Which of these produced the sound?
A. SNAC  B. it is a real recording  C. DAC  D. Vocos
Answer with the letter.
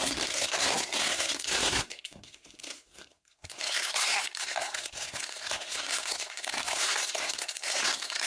A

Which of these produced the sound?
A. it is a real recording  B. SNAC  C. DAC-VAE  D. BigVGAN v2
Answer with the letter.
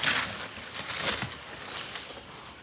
A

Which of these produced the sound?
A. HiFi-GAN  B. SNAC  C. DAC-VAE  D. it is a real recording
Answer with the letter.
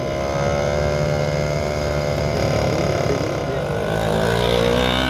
D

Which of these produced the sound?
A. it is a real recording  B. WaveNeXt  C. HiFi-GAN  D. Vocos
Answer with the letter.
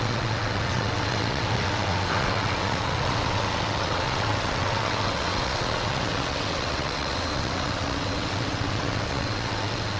B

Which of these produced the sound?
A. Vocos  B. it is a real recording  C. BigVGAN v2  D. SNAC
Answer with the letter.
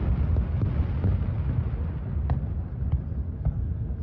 B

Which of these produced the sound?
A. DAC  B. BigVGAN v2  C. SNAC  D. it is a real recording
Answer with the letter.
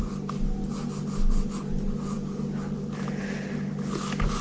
D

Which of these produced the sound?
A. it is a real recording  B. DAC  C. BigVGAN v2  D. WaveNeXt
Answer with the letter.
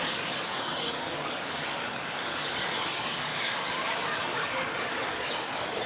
B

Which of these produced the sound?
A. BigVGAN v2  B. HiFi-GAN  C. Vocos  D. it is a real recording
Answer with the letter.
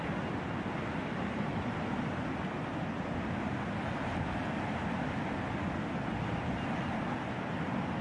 D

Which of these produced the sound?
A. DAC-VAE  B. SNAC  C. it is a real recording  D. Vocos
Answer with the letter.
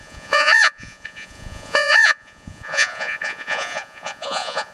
D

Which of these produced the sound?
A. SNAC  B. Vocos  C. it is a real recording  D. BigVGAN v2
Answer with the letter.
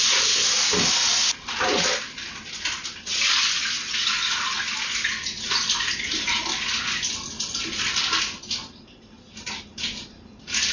C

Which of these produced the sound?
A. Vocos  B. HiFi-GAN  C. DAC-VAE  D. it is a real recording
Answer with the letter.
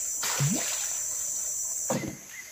D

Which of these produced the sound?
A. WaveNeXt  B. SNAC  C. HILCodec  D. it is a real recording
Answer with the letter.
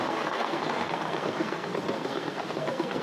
B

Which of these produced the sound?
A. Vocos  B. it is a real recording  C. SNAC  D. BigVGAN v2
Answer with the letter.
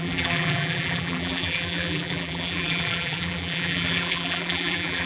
D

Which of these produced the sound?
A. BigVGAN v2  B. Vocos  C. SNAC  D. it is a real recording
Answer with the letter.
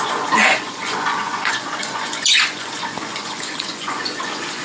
B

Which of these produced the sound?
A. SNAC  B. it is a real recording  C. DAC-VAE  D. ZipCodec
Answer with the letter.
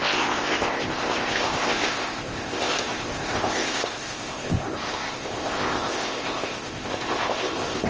D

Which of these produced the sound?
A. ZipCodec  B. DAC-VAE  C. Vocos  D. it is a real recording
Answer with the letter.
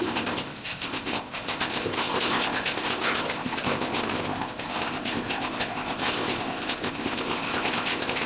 A